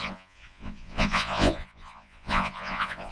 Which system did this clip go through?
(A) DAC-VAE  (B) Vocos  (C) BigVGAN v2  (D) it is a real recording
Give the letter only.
B